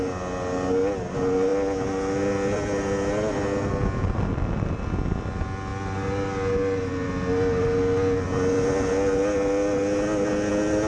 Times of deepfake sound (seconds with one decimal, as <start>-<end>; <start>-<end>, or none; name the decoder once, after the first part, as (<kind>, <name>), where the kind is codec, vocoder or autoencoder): none